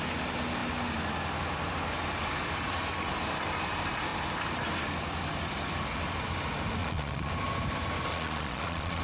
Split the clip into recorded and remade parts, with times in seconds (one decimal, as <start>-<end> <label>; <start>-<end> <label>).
0.0-6.8 recorded; 6.8-7.3 remade; 7.3-8.1 recorded; 8.1-9.0 remade